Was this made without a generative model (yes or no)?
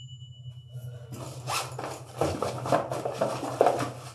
yes